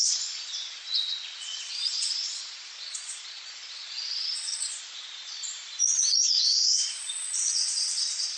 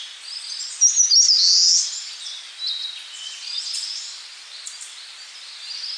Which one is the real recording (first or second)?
second